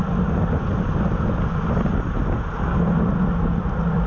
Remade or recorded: recorded